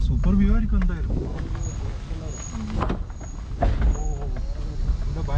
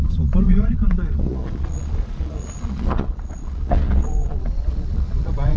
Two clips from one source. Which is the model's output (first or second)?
second